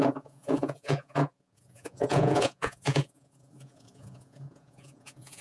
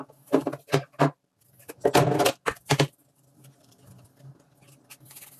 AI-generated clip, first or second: first